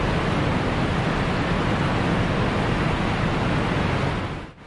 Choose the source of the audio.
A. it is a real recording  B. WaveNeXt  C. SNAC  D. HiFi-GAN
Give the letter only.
A